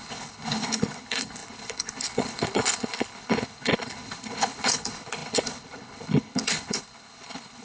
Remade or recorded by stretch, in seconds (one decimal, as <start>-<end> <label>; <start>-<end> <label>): 0.0-7.6 remade